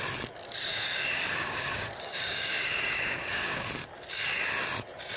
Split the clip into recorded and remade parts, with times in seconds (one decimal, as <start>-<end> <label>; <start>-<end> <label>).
0.0-0.7 recorded; 0.7-3.7 remade; 3.7-5.2 recorded